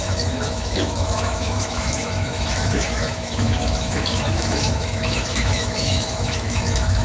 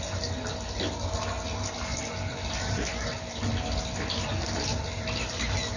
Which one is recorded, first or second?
second